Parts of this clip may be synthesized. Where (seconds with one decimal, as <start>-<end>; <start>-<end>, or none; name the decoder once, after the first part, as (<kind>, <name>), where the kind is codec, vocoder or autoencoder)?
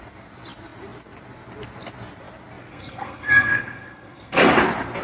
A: 2.7-4.5 (codec, SNAC)